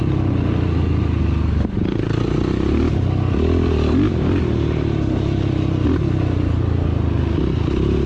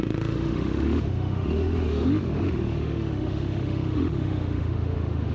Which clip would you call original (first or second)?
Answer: first